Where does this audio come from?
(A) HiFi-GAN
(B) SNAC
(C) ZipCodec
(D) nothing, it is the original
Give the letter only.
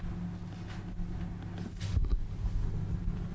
D